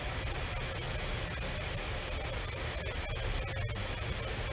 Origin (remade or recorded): recorded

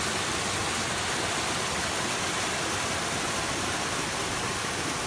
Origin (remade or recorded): recorded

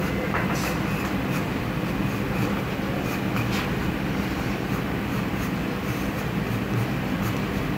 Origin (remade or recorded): recorded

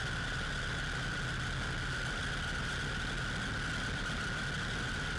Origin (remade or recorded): recorded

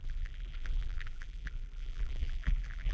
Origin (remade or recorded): remade